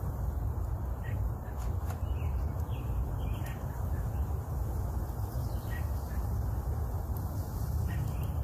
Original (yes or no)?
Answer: yes